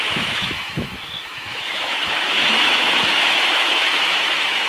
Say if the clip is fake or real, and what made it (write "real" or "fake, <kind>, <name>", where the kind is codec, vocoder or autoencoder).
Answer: fake, autoencoder, DAC-VAE